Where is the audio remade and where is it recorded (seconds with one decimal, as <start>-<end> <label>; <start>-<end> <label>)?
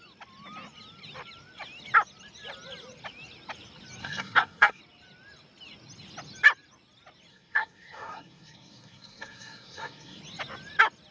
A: 0.0-4.0 recorded; 4.0-4.8 remade; 4.8-7.3 recorded; 7.3-10.2 remade; 10.2-11.1 recorded